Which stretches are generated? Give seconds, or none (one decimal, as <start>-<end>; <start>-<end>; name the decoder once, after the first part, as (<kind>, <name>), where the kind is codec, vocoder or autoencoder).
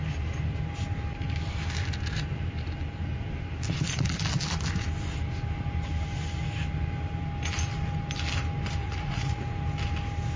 8.8-9.4 (vocoder, Vocos)